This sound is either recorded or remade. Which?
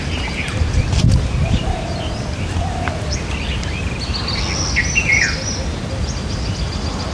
recorded